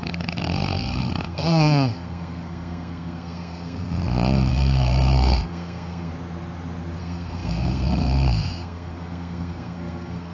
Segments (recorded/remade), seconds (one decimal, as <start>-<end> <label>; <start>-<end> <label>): 0.0-4.0 remade; 4.0-4.5 recorded; 4.5-6.1 remade; 6.1-7.0 recorded; 7.0-10.3 remade